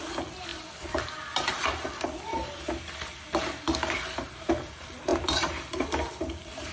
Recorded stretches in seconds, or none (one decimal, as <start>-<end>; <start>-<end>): 0.0-6.7